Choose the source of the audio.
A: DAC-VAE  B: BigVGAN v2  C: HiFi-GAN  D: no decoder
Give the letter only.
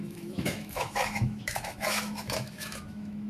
A